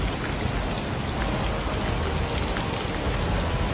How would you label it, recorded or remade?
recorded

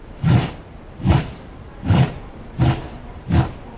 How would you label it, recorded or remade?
recorded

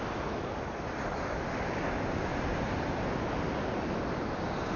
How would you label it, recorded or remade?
recorded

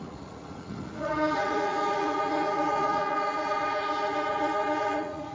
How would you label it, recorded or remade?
remade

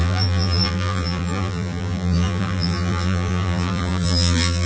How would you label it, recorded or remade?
remade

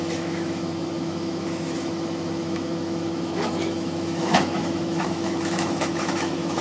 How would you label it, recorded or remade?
remade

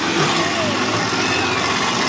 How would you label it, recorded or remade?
recorded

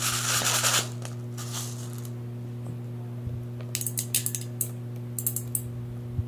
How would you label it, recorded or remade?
recorded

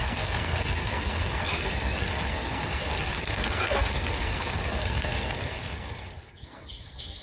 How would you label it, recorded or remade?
remade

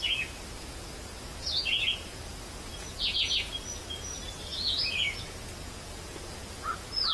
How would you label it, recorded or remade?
remade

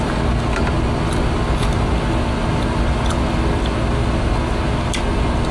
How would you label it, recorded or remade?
recorded